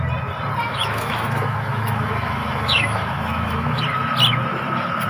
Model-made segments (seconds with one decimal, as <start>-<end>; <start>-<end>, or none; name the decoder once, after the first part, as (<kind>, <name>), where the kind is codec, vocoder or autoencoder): 0.7-3.8 (autoencoder, DAC-VAE)